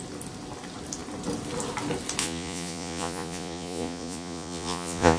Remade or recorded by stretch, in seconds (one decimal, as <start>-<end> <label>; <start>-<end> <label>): 0.0-2.2 recorded; 2.2-5.2 remade